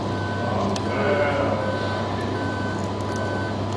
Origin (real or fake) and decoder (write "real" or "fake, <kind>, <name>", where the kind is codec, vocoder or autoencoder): real